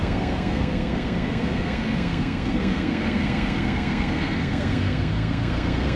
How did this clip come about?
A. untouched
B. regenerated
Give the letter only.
B